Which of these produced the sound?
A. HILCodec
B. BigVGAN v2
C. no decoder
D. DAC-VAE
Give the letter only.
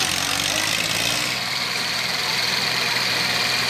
C